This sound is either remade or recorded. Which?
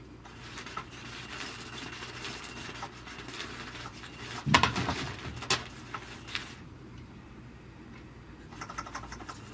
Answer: recorded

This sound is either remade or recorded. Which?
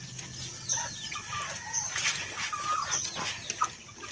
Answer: recorded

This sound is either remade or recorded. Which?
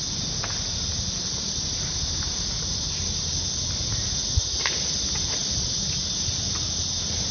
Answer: recorded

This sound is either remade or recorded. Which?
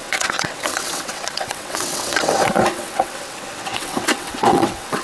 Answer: remade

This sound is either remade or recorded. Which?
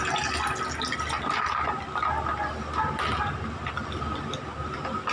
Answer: recorded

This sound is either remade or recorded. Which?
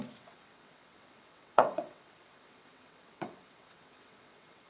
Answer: remade